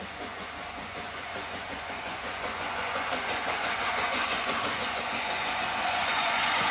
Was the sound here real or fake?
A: fake